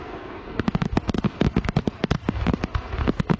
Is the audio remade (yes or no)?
yes